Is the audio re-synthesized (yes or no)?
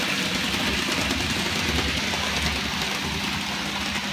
no